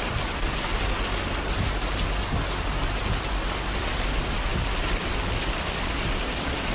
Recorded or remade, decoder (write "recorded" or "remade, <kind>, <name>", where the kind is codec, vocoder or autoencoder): recorded